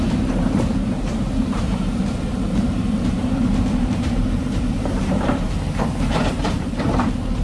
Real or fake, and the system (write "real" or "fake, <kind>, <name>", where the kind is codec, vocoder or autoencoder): fake, vocoder, BigVGAN v2